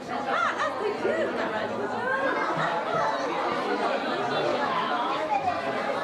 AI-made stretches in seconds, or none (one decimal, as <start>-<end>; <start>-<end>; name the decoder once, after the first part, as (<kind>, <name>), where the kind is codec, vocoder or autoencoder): 4.5-5.5 (autoencoder, DAC-VAE)